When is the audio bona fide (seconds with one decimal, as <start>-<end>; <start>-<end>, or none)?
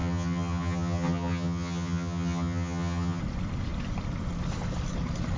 3.2-5.4